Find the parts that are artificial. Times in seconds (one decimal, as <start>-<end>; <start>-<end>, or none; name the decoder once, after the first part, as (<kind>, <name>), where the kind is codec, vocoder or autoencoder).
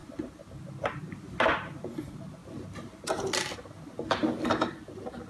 none